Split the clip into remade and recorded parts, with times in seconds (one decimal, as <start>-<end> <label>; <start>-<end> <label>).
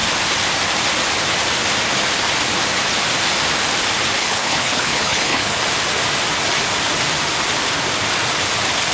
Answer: 0.0-4.2 recorded; 4.2-5.6 remade; 5.6-8.9 recorded